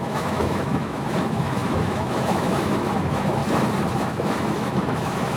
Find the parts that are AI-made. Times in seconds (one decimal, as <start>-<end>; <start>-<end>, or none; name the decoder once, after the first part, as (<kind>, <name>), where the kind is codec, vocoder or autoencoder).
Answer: 0.0-3.4 (autoencoder, DAC-VAE); 3.9-5.4